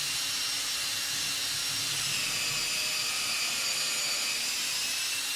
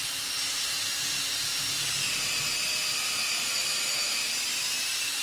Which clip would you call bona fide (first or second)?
first